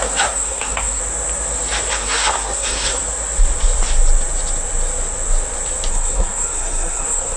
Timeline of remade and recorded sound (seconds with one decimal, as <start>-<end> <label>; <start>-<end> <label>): 0.0-1.0 remade; 1.0-1.9 recorded; 1.9-3.0 remade; 3.0-5.9 recorded; 5.9-7.4 remade